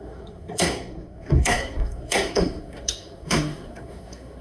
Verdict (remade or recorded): remade